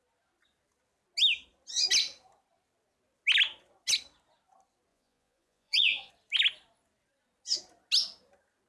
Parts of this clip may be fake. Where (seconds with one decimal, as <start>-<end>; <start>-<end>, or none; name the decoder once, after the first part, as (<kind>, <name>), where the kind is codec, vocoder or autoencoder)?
4.9-6.1 (vocoder, Vocos)